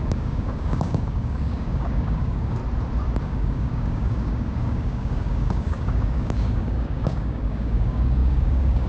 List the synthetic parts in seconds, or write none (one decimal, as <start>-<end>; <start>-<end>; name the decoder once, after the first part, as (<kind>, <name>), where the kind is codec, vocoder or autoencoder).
0.0-2.6 (codec, DAC); 3.2-8.9